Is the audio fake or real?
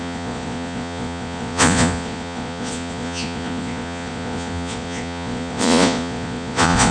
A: fake